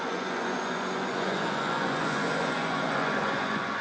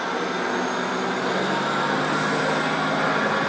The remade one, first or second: first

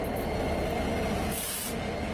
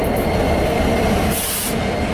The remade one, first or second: second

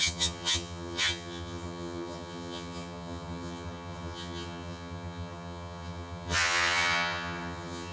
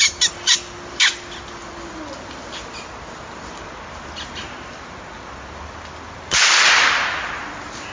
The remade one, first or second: first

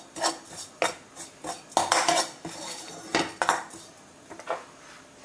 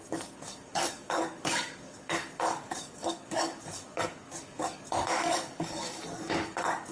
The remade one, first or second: second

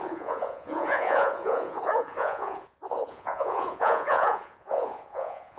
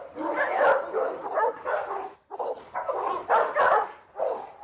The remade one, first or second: first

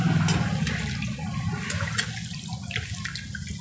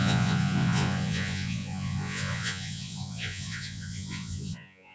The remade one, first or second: second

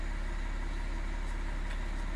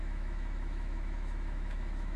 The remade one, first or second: second